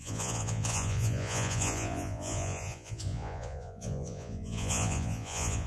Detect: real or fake fake